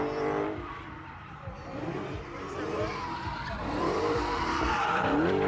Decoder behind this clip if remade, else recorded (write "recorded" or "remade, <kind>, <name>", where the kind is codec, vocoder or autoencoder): remade, vocoder, BigVGAN v2